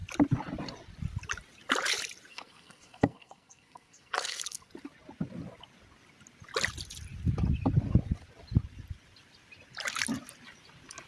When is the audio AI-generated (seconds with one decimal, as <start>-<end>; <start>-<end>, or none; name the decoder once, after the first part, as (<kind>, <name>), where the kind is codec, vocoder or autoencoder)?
2.3-4.7 (codec, SNAC)